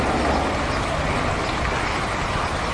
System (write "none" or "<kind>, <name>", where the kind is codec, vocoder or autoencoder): none